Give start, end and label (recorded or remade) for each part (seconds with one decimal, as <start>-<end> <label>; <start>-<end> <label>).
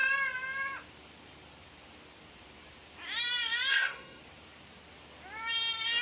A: 0.0-3.7 recorded; 3.7-4.2 remade; 4.2-6.0 recorded